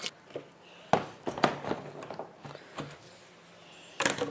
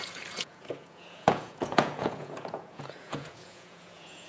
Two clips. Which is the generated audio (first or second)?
second